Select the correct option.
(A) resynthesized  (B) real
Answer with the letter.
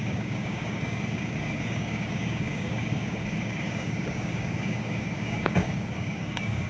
A